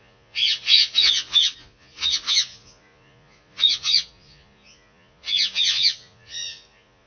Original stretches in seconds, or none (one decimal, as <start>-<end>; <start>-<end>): none

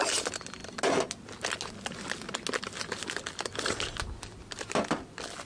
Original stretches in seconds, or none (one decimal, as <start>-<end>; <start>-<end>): 0.0-5.5

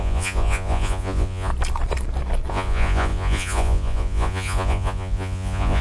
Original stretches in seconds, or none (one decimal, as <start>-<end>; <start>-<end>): 1.5-2.5

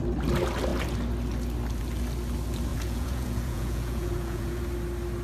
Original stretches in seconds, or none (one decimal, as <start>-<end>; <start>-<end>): 0.0-2.7; 4.6-5.2

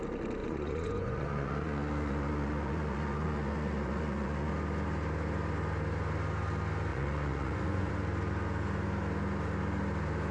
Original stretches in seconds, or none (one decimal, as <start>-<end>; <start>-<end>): 0.0-0.4; 4.5-6.9; 7.9-10.3